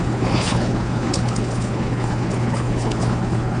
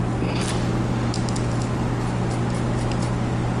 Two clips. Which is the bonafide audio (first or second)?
second